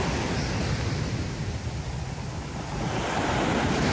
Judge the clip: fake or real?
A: real